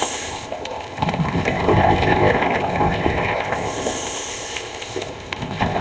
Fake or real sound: fake